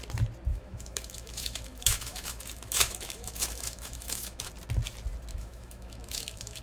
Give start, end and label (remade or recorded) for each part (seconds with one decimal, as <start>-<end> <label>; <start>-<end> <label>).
0.0-0.5 recorded; 0.5-4.5 remade; 4.5-5.3 recorded; 5.3-6.6 remade